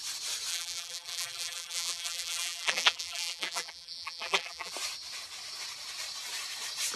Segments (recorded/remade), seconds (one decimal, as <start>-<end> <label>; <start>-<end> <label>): 0.0-0.5 recorded; 0.5-4.7 remade; 4.7-7.0 recorded